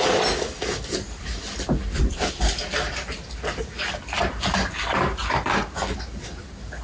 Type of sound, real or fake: real